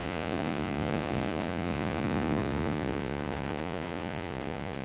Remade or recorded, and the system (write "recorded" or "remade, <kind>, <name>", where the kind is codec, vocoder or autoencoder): remade, vocoder, Vocos